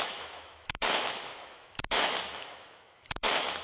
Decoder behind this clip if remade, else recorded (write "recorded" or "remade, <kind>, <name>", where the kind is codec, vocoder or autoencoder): remade, autoencoder, DAC-VAE